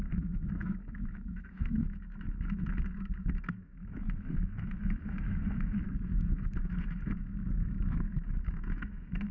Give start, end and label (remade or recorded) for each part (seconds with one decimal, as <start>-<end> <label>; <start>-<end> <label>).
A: 0.0-9.3 remade